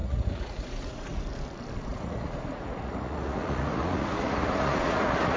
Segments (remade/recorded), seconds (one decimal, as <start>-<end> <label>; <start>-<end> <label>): 0.0-1.2 remade; 1.2-1.9 recorded; 1.9-5.4 remade